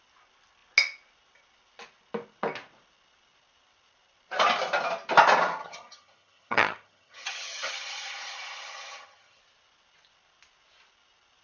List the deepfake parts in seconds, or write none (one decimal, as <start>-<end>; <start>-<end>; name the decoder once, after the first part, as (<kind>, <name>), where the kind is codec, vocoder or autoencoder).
5.6-9.4 (vocoder, HiFi-GAN)